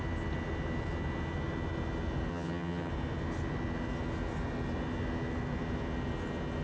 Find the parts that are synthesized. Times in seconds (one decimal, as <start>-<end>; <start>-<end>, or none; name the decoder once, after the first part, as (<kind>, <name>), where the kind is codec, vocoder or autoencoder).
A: 2.3-2.9 (vocoder, HiFi-GAN)

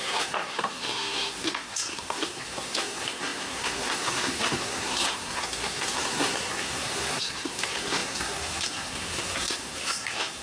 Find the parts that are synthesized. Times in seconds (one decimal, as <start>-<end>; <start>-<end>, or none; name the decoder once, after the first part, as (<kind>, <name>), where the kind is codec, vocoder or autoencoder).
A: 0.0-10.4 (codec, SNAC)

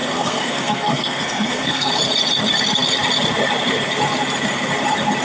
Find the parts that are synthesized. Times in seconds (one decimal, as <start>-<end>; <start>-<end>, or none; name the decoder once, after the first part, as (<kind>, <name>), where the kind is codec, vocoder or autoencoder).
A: 0.0-1.9 (codec, SNAC)

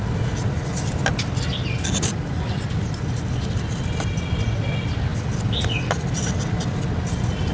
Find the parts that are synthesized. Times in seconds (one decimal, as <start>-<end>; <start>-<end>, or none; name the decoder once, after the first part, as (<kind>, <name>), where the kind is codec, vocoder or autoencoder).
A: none